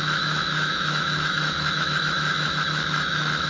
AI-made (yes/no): yes